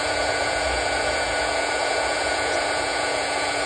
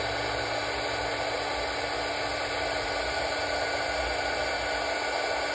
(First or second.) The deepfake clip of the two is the first